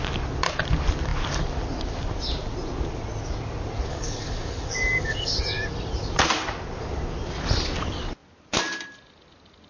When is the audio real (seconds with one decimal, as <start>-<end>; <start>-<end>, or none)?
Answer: 0.0-3.9; 5.4-9.7